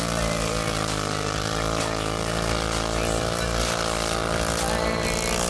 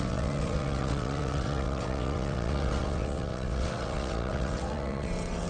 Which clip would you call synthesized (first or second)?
second